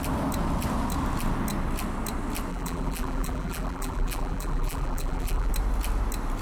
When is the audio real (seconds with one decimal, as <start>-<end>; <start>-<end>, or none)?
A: 0.0-2.5; 5.5-6.4